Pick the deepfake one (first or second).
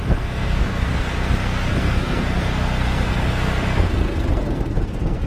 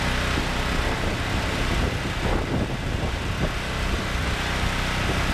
first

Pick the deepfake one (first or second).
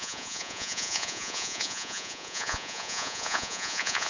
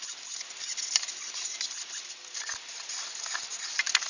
first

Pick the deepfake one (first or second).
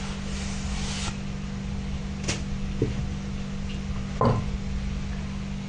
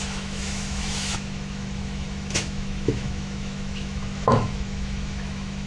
second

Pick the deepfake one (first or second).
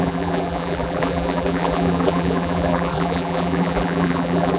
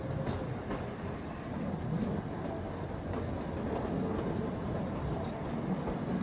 first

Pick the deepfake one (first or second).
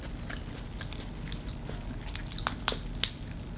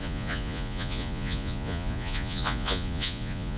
second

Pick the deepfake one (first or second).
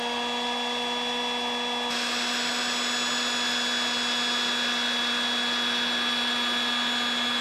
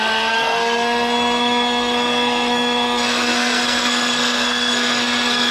second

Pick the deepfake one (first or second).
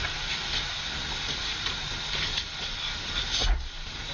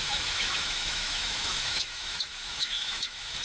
second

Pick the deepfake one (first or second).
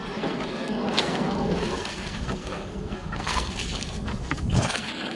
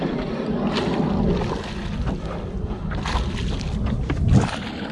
first